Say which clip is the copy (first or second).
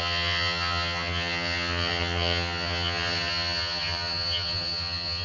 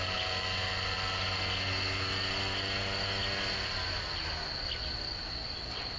first